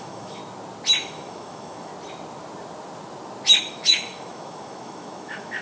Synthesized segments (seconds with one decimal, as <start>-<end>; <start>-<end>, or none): 0.0-0.4; 1.0-1.9; 3.6-5.6